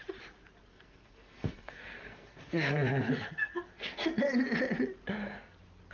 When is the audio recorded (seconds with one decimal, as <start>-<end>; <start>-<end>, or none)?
0.0-0.7; 4.2-5.9